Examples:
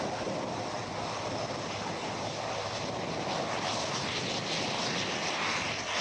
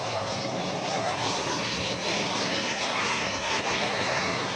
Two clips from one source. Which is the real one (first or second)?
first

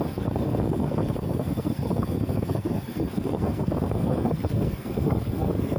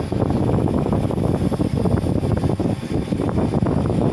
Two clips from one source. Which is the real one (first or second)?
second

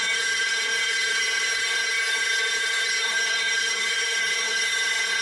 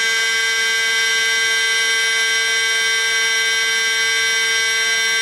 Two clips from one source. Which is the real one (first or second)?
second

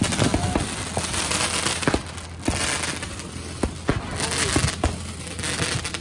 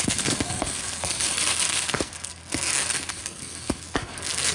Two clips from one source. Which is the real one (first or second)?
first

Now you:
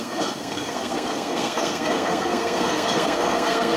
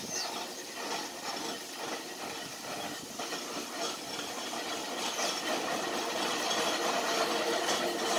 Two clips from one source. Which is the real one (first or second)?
second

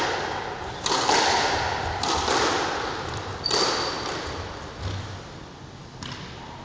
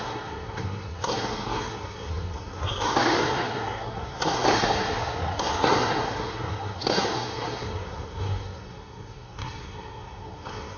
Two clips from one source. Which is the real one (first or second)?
first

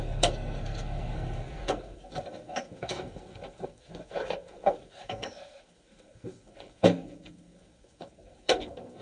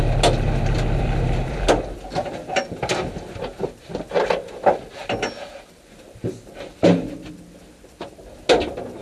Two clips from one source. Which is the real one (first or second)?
second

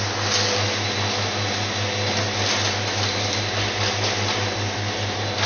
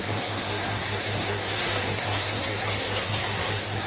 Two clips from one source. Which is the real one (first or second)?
first